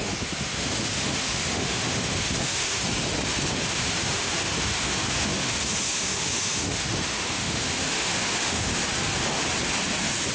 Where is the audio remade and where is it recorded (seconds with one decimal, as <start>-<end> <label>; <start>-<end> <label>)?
0.0-2.8 remade; 2.8-3.5 recorded; 3.5-8.7 remade; 8.7-10.3 recorded